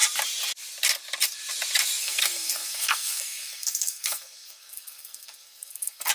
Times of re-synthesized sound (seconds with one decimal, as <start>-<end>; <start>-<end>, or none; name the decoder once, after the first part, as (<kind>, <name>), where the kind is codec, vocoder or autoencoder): 2.0-6.1 (codec, SNAC)